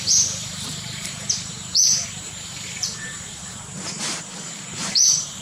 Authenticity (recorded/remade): remade